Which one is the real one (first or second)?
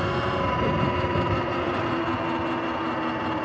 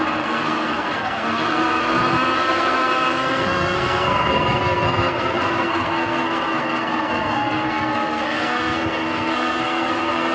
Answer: first